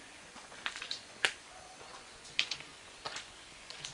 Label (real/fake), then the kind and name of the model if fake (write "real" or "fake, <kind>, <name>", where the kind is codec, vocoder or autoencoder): fake, vocoder, Vocos